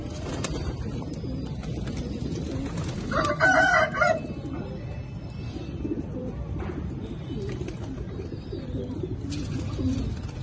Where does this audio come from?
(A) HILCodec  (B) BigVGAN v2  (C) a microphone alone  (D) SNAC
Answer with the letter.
C